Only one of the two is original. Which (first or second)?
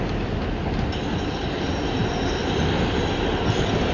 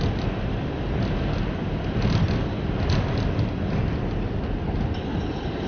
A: first